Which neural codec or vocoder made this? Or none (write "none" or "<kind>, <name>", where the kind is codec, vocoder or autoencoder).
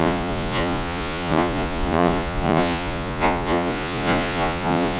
vocoder, Vocos